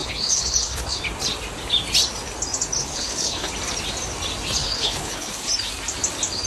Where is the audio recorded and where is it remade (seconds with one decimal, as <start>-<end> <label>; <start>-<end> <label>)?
0.0-1.0 remade; 1.0-2.8 recorded; 2.8-3.5 remade; 3.5-4.6 recorded; 4.6-5.5 remade; 5.5-6.5 recorded